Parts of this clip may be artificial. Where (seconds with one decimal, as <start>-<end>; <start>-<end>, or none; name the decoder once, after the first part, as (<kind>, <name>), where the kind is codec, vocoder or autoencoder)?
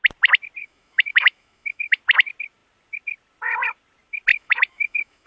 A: 0.6-2.0 (autoencoder, DAC-VAE); 4.3-5.3